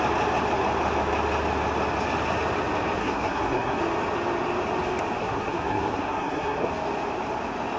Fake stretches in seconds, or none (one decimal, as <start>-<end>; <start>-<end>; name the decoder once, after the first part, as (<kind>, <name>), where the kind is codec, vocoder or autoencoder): 3.0-3.8 (codec, SNAC); 5.2-6.7

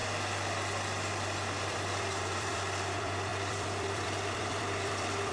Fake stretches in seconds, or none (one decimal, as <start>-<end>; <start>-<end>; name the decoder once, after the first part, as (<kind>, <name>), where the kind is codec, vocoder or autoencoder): 1.6-5.3 (vocoder, BigVGAN v2)

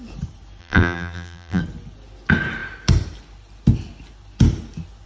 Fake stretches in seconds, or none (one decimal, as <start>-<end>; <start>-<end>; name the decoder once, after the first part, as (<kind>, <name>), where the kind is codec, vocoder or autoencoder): 0.6-1.6 (vocoder, BigVGAN v2)

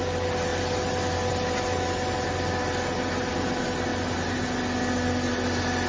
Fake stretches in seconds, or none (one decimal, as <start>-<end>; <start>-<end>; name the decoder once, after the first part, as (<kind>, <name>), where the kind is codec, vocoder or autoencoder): none